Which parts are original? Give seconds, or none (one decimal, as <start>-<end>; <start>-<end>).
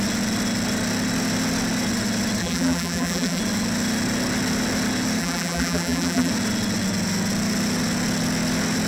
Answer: 0.0-2.4; 3.4-5.2; 6.3-8.9